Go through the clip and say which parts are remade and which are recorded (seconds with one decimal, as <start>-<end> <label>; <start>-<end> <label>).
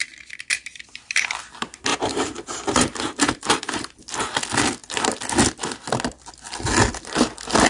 0.0-1.9 recorded; 1.9-4.0 remade; 4.0-7.7 recorded